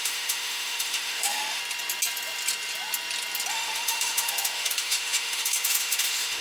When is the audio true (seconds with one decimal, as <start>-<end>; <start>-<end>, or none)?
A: 1.6-3.5

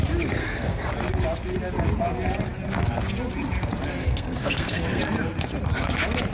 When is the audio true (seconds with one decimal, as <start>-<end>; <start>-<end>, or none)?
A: 0.0-0.4; 0.9-4.0; 5.0-6.3